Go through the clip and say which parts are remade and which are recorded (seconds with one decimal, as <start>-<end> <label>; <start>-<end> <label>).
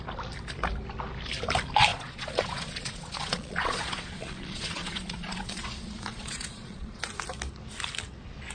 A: 0.0-1.9 recorded; 1.9-7.0 remade; 7.0-8.5 recorded